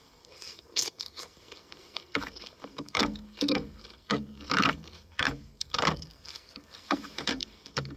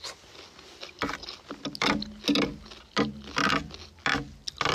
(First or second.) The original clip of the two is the second